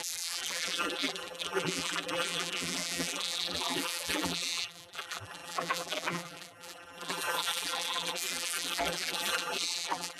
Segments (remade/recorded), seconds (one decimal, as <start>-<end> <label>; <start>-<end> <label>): 0.0-10.2 remade